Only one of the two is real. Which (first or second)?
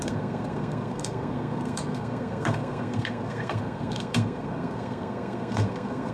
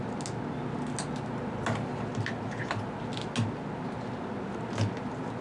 second